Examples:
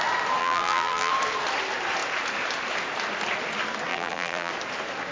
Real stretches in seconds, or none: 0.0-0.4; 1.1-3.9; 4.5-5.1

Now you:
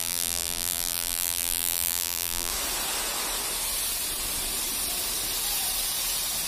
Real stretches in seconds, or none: 2.5-6.5

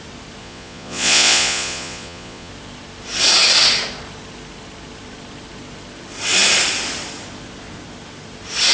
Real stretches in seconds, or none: 0.0-0.4; 2.5-8.7

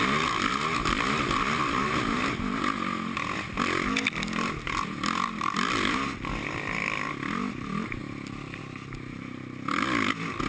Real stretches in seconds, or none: 0.0-10.5

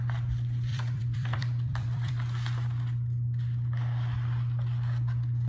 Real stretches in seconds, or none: 0.0-0.7; 2.1-5.5

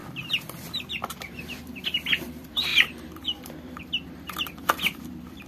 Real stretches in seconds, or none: 0.0-1.6

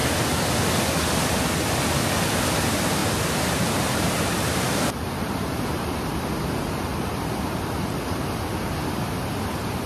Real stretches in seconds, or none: 0.0-3.0; 6.3-6.9; 8.5-9.9